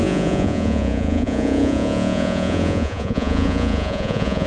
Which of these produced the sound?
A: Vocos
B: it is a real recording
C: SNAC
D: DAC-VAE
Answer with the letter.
A